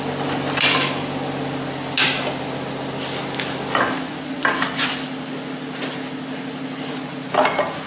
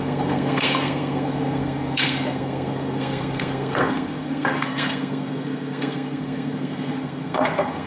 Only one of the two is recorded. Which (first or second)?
first